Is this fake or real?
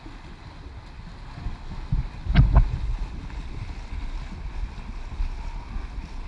real